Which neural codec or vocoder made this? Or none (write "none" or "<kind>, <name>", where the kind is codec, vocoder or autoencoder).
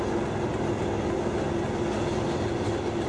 none